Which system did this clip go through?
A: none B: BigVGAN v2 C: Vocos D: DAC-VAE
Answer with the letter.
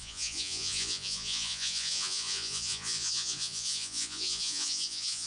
C